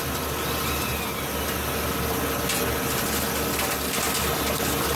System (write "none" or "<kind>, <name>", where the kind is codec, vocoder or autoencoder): none